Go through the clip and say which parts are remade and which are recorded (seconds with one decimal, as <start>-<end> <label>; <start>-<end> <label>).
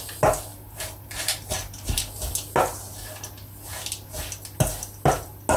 0.0-0.5 recorded; 0.5-2.0 remade; 2.0-5.6 recorded